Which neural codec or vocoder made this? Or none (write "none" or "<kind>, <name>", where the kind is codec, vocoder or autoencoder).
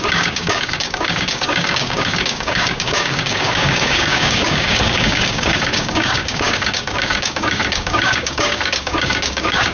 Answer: codec, DAC